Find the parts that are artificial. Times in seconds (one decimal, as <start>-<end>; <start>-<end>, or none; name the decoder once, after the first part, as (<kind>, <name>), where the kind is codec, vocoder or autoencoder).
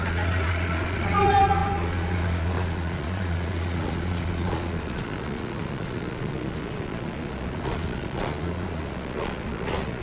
0.0-10.0 (vocoder, Vocos)